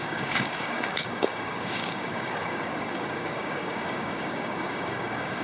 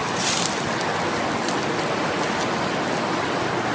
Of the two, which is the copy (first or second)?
first